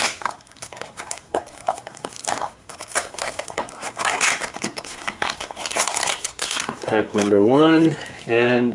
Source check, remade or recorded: remade